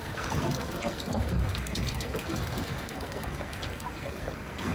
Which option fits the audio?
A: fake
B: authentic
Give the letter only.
A